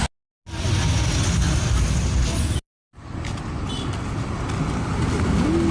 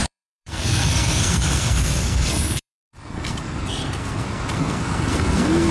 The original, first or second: first